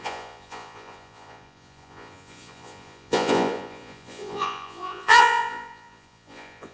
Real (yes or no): no